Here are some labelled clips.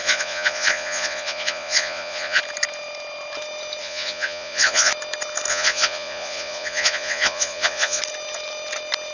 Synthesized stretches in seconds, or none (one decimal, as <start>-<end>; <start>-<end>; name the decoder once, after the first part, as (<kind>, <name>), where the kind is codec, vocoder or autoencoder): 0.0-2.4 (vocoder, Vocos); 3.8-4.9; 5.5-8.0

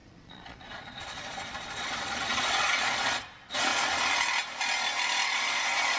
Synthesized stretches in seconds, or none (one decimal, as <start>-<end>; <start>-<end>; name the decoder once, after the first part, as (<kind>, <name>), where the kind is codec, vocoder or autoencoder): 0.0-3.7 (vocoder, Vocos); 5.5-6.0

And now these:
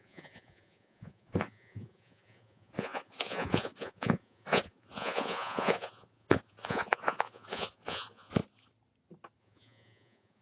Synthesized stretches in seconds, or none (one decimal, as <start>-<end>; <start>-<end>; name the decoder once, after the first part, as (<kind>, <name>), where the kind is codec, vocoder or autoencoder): 0.0-8.4 (vocoder, Vocos); 9.4-10.4